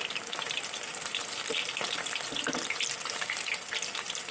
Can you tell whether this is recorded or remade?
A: recorded